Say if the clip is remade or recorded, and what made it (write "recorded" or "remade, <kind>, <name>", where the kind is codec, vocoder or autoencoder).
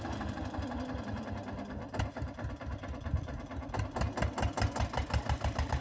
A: recorded